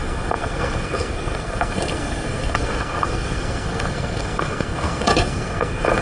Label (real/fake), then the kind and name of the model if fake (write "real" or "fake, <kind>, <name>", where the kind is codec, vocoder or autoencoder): fake, codec, SNAC